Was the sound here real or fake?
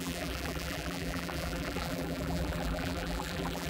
fake